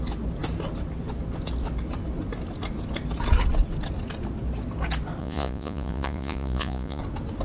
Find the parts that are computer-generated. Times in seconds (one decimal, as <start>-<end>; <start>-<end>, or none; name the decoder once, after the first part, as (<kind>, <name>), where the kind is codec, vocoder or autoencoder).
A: 5.2-7.0 (vocoder, Vocos)